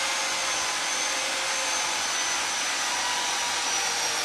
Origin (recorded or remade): remade